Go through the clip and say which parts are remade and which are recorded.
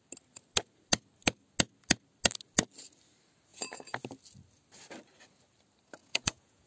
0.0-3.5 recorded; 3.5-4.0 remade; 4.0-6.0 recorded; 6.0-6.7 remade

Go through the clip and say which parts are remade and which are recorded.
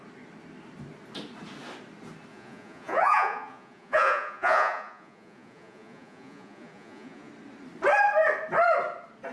0.0-2.3 recorded; 2.3-7.3 remade; 7.3-9.3 recorded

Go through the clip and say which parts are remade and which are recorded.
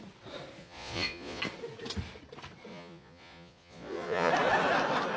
0.0-0.6 recorded; 0.6-1.4 remade; 1.4-2.7 recorded; 2.7-4.3 remade; 4.3-5.2 recorded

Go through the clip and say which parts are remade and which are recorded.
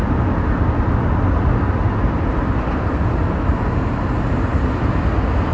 0.0-5.5 recorded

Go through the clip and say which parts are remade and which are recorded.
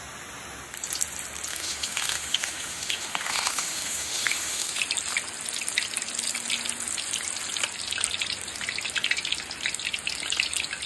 0.0-1.5 recorded; 1.5-4.8 remade; 4.8-10.9 recorded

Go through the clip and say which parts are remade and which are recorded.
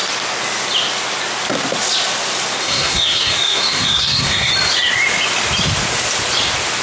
0.0-2.6 recorded; 2.6-4.5 remade; 4.5-6.8 recorded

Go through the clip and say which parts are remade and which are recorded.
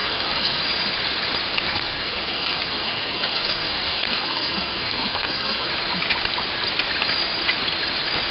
0.0-0.6 remade; 0.6-1.7 recorded; 1.7-5.7 remade; 5.7-8.3 recorded